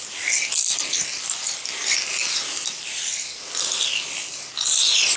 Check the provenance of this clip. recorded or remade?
recorded